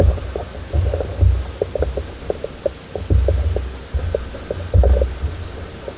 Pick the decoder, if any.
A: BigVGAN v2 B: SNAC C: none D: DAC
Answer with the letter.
C